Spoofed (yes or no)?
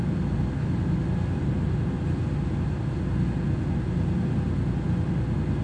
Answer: no